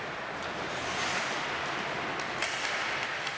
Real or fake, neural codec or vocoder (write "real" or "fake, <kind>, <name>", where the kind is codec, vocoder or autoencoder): real